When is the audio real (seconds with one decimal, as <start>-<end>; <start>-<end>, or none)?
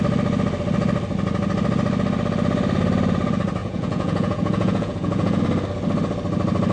0.0-3.6; 5.4-6.7